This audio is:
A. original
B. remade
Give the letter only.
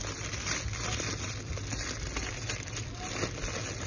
A